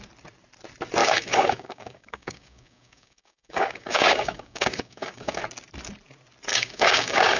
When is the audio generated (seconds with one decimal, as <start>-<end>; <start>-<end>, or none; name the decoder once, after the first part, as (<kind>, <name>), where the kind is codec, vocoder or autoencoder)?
1.0-5.4 (codec, DAC); 6.5-7.4